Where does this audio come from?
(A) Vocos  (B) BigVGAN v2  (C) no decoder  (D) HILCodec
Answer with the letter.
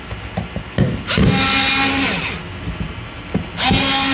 C